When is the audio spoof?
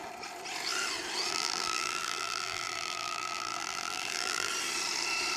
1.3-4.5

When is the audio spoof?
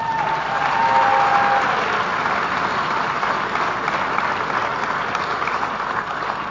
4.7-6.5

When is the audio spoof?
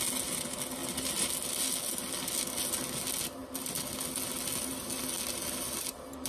none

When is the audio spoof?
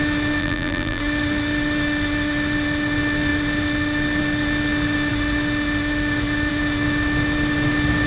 0.4-1.0